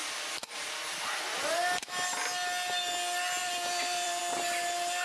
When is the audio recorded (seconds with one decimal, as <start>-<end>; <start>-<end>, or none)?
1.2-3.4; 4.2-5.0